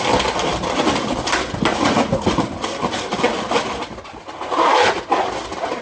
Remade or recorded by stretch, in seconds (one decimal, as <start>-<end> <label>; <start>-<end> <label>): 0.0-1.7 recorded; 1.7-2.3 remade; 2.3-5.8 recorded